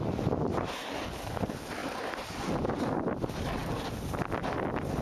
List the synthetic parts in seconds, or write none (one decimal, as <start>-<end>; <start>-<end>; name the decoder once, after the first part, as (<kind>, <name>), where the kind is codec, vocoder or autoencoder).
none